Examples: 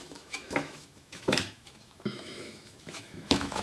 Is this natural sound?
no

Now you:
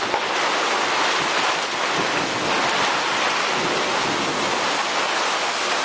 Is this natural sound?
yes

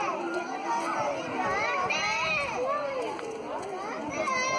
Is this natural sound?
yes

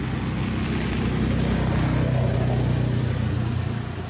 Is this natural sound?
yes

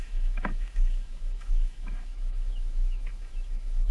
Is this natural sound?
no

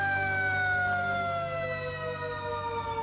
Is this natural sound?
yes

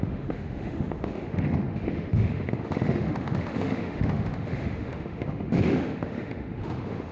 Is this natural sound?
no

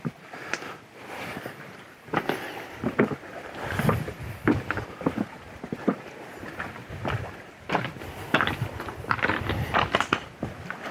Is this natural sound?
yes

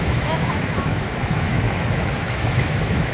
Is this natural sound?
no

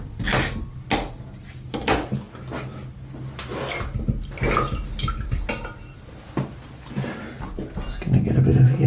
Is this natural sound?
yes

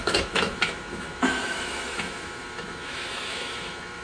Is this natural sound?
no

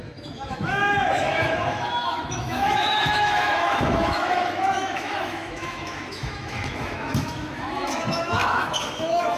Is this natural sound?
no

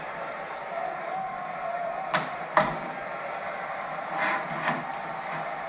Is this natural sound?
yes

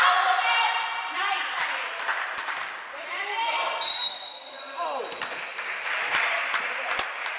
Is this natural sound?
yes